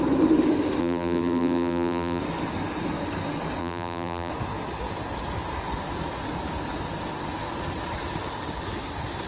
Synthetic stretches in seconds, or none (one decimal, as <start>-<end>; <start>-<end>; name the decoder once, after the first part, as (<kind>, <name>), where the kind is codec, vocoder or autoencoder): 0.8-2.2 (vocoder, BigVGAN v2); 3.6-4.3